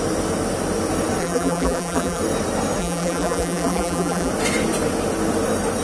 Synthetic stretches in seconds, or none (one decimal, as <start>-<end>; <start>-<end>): 1.2-2.2; 2.8-4.3